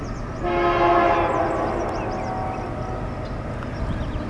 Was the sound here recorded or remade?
recorded